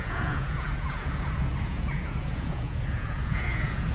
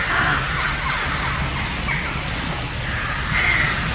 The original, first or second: second